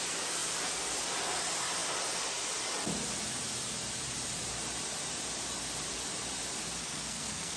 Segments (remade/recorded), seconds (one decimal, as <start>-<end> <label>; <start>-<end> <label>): 0.0-6.8 recorded; 6.8-7.6 remade